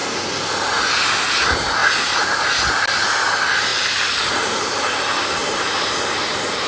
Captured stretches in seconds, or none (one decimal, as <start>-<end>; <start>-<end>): 0.0-1.8; 2.5-3.7; 4.8-5.4; 6.0-6.7